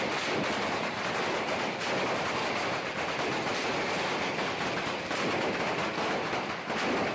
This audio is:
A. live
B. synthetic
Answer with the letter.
A